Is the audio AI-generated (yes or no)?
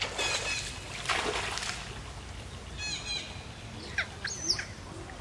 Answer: no